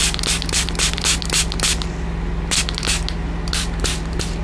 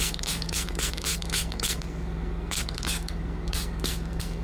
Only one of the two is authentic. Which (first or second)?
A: first